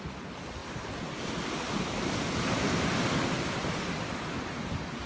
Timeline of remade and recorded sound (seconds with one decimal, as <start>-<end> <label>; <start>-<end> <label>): 0.0-5.1 recorded